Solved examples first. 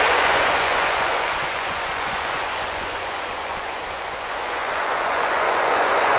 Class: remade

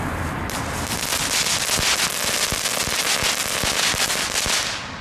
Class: recorded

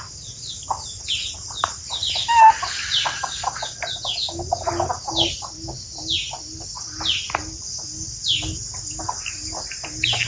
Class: recorded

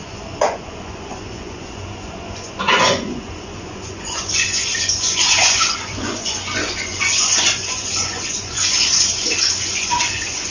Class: remade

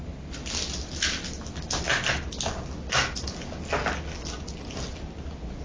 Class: recorded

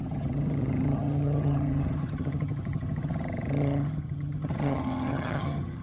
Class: remade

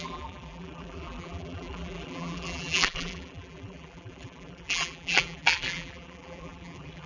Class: remade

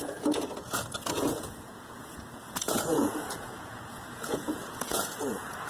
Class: remade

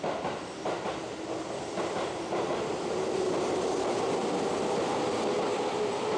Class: remade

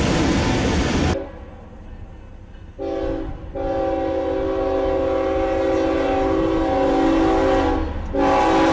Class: recorded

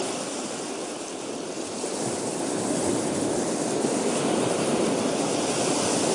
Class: recorded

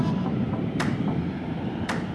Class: remade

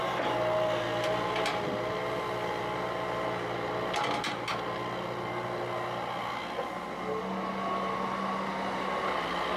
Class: recorded